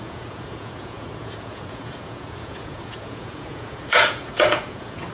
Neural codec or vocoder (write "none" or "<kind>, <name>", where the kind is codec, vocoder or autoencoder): vocoder, Vocos